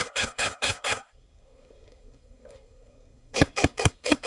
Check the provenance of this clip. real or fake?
fake